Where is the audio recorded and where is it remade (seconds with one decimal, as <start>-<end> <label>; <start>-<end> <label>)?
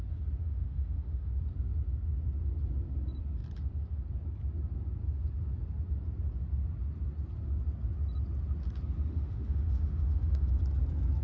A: 0.0-0.4 recorded; 0.4-1.3 remade; 1.3-9.1 recorded; 9.1-10.5 remade; 10.5-11.2 recorded